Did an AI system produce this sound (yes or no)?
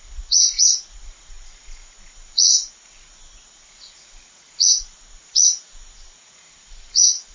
yes